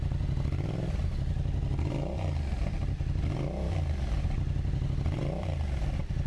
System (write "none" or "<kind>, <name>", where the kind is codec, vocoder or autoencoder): none